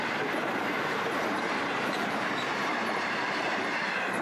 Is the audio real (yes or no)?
no